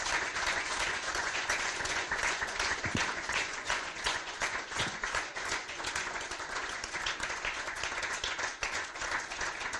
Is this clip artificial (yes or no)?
yes